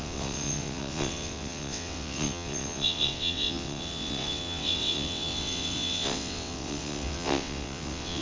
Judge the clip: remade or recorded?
remade